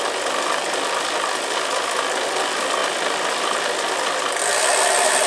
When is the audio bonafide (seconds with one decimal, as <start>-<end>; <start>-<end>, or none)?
0.0-5.3